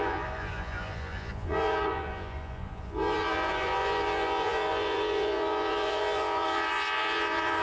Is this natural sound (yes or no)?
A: no